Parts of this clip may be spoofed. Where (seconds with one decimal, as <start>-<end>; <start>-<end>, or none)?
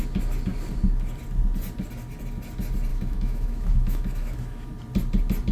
2.9-4.7